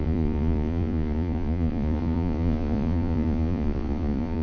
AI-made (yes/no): yes